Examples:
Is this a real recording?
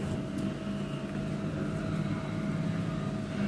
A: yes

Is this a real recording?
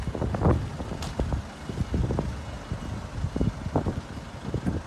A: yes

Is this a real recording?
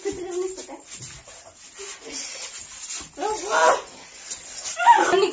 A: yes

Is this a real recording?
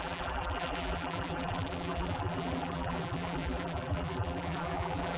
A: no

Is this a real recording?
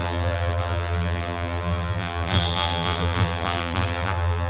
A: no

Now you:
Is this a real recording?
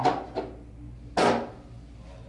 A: yes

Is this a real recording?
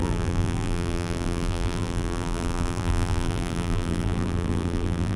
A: no